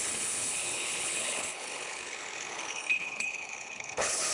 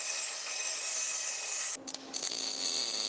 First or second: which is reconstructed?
first